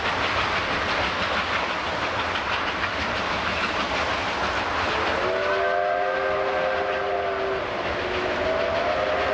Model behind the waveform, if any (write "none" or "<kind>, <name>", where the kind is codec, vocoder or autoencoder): none